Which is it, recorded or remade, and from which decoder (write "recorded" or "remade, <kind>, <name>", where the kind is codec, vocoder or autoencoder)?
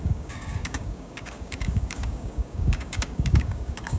remade, codec, DAC